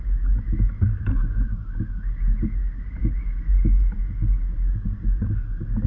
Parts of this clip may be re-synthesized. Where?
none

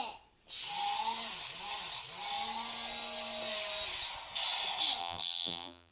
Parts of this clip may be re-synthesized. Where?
5.0-5.9

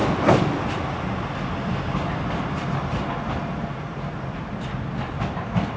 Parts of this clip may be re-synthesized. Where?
none

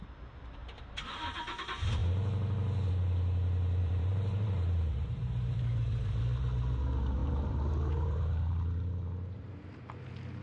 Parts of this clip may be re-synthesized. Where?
0.6-1.4; 3.8-6.1; 7.2-10.0

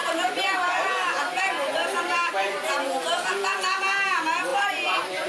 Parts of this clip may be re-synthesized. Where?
0.0-0.9; 1.8-2.3; 4.5-5.3

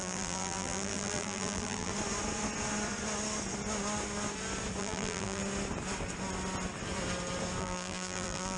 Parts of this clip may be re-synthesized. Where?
0.0-1.9; 4.8-5.4; 7.6-8.6

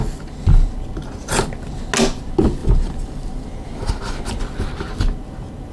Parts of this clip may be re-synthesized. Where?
2.6-4.4